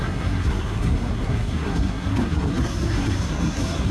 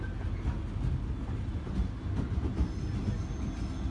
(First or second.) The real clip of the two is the second